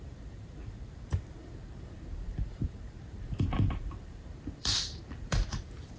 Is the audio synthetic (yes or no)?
yes